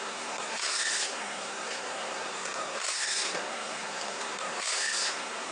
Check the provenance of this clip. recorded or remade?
remade